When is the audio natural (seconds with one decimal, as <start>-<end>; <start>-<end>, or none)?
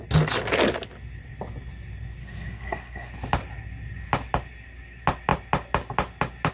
0.0-2.2; 3.1-6.5